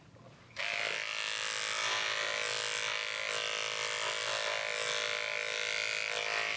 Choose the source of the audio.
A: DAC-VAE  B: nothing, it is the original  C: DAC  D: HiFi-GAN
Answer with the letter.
B